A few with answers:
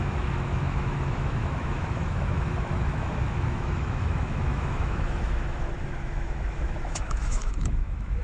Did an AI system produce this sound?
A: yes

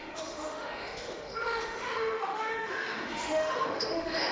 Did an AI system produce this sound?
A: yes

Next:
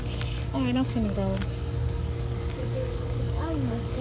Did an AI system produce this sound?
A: yes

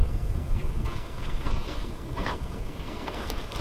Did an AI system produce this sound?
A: yes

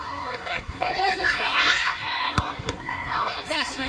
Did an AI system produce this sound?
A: yes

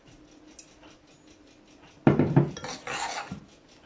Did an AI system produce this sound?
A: no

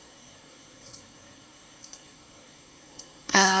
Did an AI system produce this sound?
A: yes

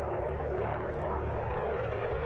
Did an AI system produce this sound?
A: yes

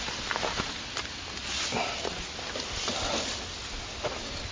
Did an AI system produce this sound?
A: no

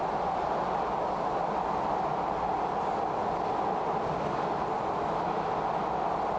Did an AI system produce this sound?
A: no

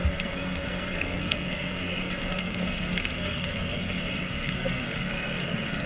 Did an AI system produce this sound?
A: yes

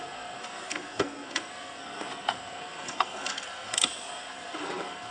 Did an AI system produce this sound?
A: yes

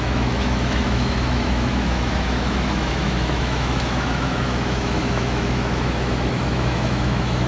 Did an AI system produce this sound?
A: yes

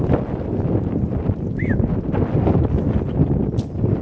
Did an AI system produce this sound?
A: no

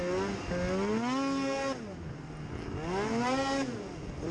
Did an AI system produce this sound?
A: no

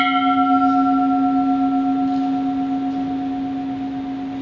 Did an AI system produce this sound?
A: no